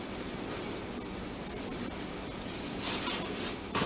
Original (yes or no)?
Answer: yes